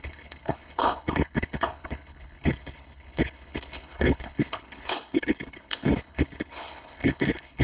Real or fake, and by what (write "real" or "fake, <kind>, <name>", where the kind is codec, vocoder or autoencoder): fake, codec, HILCodec